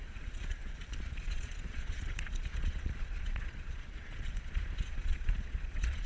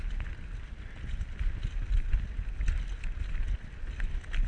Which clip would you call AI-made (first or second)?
first